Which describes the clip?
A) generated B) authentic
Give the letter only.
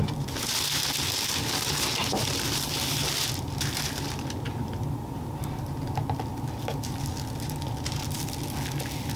B